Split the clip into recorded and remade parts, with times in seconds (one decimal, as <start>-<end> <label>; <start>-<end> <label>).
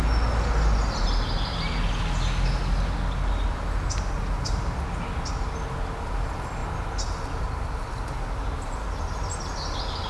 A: 0.0-10.1 recorded